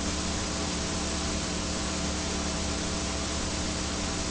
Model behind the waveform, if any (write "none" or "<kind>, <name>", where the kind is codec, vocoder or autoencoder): vocoder, BigVGAN v2